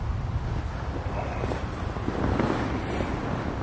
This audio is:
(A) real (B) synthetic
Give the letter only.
A